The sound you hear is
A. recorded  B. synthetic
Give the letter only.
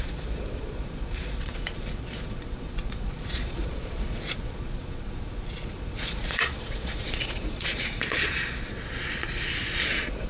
B